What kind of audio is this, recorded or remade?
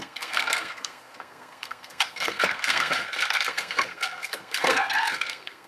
remade